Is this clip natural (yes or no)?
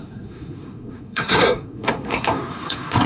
no